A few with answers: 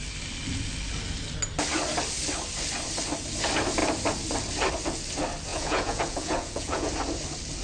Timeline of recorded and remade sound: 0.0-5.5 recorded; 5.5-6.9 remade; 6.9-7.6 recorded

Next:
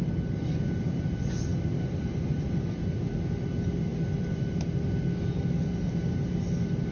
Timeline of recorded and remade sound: 0.0-6.9 recorded

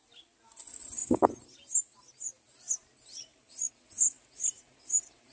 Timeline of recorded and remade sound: 0.0-5.3 recorded

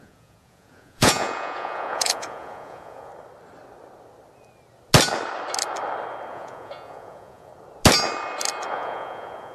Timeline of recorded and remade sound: 0.0-3.1 remade; 3.1-6.3 recorded; 6.3-7.5 remade; 7.5-8.7 recorded; 8.7-9.5 remade

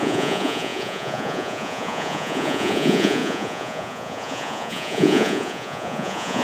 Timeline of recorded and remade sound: 0.0-6.4 remade

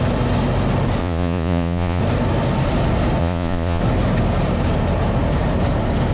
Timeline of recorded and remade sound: 0.0-1.0 recorded; 1.0-2.0 remade; 2.0-3.2 recorded; 3.2-3.8 remade; 3.8-6.1 recorded

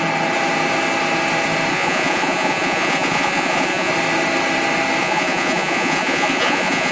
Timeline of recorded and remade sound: 0.0-1.7 recorded; 1.7-3.9 remade; 3.9-5.0 recorded; 5.0-6.9 remade